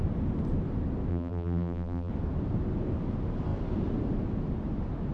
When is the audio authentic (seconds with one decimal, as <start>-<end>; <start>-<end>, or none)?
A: 0.0-1.1; 2.1-5.1